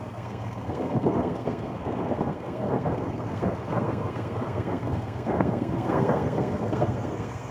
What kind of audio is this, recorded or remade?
remade